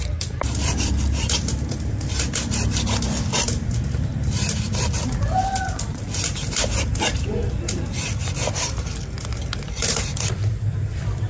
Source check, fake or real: fake